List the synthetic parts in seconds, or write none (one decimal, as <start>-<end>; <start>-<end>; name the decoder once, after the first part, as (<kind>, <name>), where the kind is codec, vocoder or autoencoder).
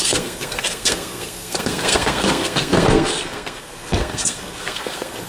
0.0-5.3 (codec, SNAC)